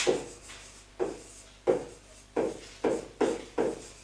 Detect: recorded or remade recorded